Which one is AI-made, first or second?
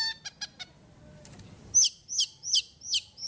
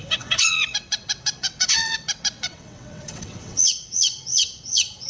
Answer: second